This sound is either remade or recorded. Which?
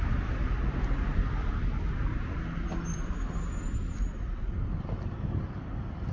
recorded